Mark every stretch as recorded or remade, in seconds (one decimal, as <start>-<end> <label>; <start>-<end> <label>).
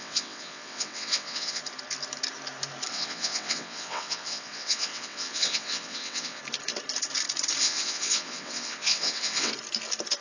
0.0-1.6 remade; 1.6-2.9 recorded; 2.9-6.4 remade; 6.4-7.6 recorded; 7.6-9.5 remade; 9.5-10.2 recorded